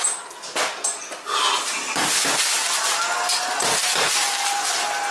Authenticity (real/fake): real